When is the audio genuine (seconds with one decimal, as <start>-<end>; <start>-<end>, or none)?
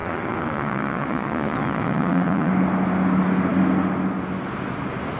2.5-5.2